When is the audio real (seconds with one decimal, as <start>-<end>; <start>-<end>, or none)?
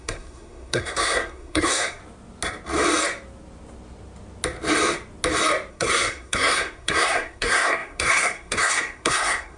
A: 2.0-5.7